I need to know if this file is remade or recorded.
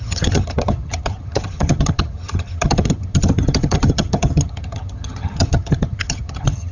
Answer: remade